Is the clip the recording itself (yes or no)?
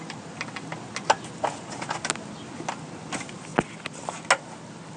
yes